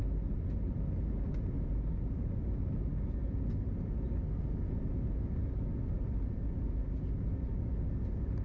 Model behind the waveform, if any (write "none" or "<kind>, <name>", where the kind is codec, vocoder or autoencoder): none